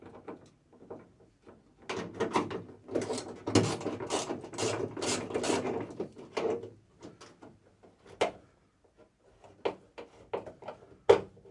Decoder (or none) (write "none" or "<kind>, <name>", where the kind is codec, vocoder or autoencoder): none